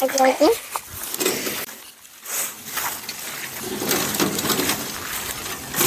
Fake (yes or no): no